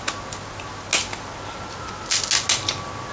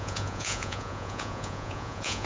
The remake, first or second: second